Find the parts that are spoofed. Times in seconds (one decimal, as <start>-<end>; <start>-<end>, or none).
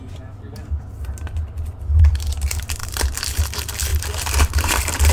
2.8-3.4; 3.9-5.1